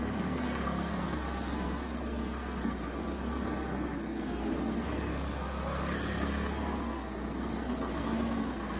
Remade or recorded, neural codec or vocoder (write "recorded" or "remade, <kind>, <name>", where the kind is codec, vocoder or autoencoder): remade, codec, SNAC